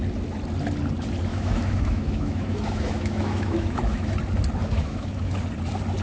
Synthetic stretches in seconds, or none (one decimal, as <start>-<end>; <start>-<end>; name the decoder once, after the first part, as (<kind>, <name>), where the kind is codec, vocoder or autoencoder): 1.3-4.1 (autoencoder, DAC-VAE); 4.6-5.3